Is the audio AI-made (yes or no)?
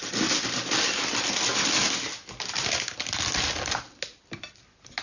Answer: no